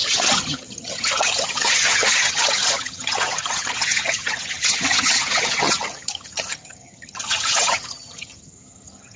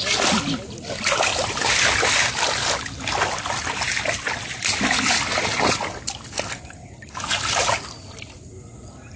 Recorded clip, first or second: second